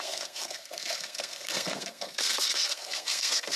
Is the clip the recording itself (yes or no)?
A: no